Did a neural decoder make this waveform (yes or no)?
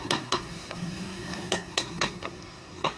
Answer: yes